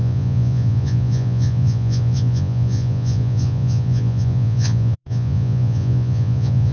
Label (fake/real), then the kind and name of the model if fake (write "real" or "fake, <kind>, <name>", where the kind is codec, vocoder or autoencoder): fake, vocoder, Vocos